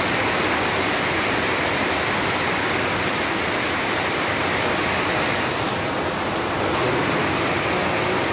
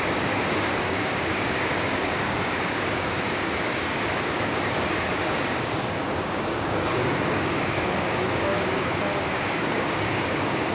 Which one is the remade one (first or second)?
second